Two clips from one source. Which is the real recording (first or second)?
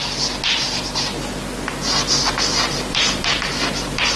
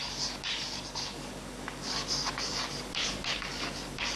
first